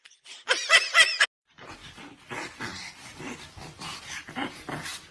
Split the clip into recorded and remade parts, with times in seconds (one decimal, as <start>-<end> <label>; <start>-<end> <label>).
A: 0.0-1.8 recorded; 1.8-5.1 remade

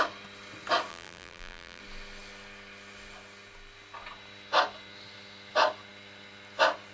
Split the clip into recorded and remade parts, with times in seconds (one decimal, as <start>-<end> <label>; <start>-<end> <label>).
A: 0.0-0.9 recorded; 0.9-1.8 remade; 1.8-6.9 recorded

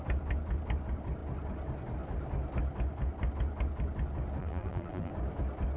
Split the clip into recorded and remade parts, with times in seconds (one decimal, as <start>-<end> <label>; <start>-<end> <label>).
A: 0.0-4.4 recorded; 4.4-5.1 remade; 5.1-5.8 recorded

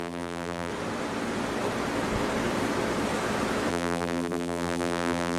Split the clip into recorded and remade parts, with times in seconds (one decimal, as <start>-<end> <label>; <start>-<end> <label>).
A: 0.0-0.7 remade; 0.7-3.7 recorded; 3.7-5.4 remade

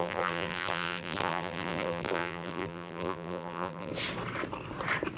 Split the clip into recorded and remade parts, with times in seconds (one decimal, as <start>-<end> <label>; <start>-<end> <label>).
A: 0.0-3.9 remade; 3.9-5.2 recorded

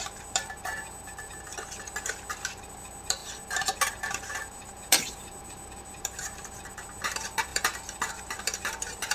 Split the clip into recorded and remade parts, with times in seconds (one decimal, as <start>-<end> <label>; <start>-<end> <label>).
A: 0.0-1.5 remade; 1.5-2.1 recorded; 2.1-9.1 remade

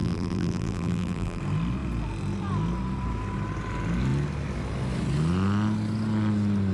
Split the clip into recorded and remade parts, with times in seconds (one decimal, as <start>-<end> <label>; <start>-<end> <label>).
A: 0.0-1.4 remade; 1.4-6.7 recorded